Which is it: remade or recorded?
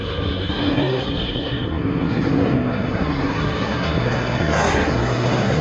remade